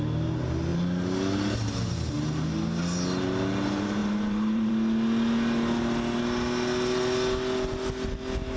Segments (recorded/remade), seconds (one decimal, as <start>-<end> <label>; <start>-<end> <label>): 0.0-4.0 recorded; 4.0-4.7 remade; 4.7-8.6 recorded